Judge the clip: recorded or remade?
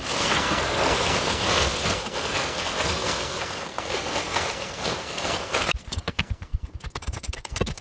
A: remade